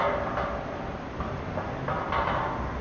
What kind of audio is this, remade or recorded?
recorded